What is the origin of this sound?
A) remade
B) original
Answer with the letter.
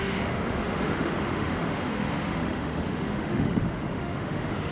A